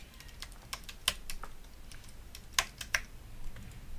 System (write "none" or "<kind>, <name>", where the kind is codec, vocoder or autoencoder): none